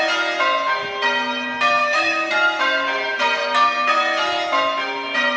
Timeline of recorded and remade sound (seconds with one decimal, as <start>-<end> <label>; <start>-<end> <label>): 0.0-1.8 recorded; 1.8-2.3 remade; 2.3-5.4 recorded